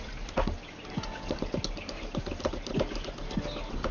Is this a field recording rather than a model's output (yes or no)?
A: yes